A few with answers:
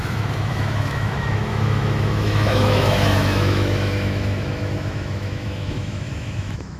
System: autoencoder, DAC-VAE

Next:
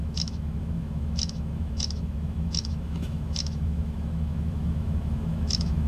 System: autoencoder, DAC-VAE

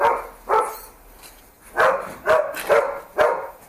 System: none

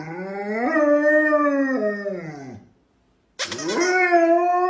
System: none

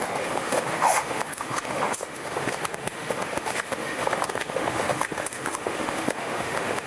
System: autoencoder, DAC-VAE